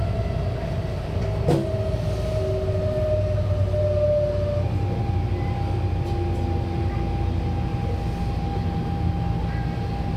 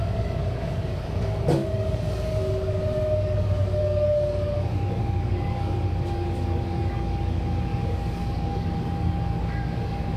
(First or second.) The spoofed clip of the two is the second